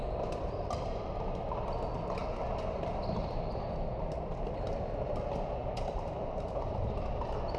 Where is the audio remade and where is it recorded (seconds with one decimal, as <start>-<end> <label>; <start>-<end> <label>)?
0.0-1.1 remade; 1.1-5.6 recorded; 5.6-7.0 remade; 7.0-7.6 recorded